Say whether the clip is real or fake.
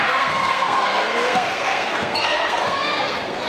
fake